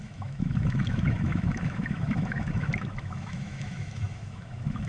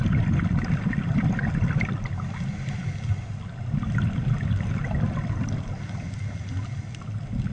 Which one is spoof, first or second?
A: first